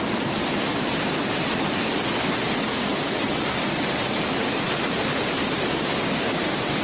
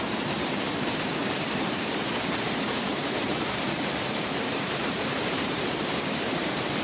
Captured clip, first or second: first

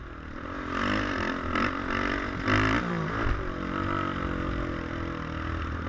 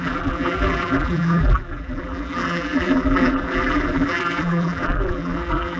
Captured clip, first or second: first